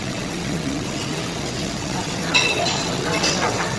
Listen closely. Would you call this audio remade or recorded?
remade